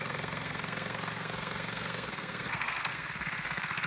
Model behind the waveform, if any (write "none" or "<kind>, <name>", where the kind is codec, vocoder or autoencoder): codec, SNAC